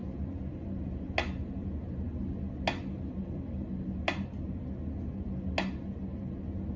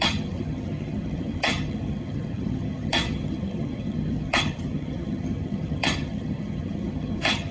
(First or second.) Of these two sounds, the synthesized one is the second